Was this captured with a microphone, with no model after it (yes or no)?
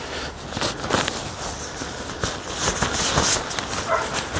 yes